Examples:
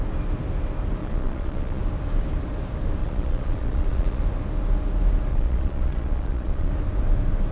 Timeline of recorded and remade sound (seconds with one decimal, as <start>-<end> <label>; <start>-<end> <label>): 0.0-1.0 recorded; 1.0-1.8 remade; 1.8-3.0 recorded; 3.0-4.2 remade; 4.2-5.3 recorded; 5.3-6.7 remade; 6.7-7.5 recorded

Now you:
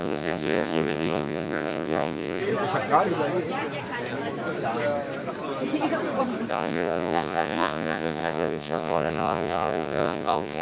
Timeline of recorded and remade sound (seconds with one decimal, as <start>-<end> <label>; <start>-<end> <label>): 0.0-2.4 remade; 2.4-6.5 recorded; 6.5-10.6 remade

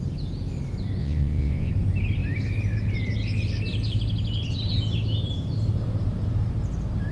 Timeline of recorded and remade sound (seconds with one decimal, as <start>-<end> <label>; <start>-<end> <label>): 0.0-1.0 recorded; 1.0-1.7 remade; 1.7-7.1 recorded